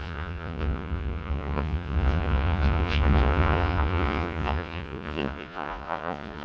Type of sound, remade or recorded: remade